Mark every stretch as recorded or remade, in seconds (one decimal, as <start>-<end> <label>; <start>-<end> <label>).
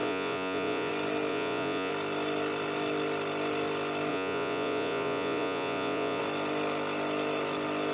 0.0-0.9 remade; 0.9-1.3 recorded; 1.3-1.9 remade; 1.9-4.1 recorded; 4.1-6.2 remade; 6.2-7.9 recorded